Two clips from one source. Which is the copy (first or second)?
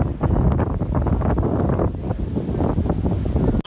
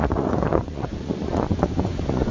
second